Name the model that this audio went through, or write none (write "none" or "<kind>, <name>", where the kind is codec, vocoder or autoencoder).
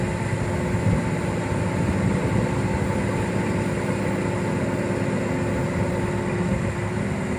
none